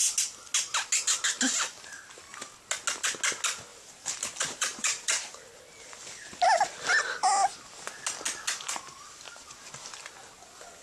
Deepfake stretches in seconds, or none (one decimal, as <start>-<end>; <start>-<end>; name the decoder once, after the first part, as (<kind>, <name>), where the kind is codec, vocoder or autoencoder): 3.7-5.4 (vocoder, BigVGAN v2)

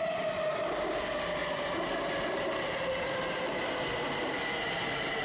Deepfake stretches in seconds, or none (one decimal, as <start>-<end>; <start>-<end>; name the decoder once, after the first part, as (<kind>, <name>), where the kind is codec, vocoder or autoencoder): none

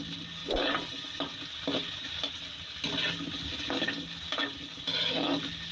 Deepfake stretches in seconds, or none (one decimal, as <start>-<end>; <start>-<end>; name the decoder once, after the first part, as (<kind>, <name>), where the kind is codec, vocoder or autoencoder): none

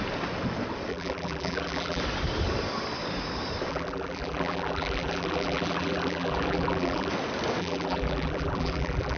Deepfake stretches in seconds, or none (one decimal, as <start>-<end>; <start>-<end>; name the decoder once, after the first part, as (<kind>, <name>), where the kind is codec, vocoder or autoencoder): 0.9-2.0 (vocoder, BigVGAN v2); 3.7-7.1; 7.6-9.2

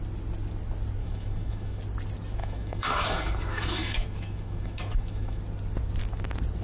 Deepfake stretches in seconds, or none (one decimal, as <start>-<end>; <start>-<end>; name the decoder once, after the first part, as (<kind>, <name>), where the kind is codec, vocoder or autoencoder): 1.0-1.8 (autoencoder, DAC-VAE); 2.4-5.4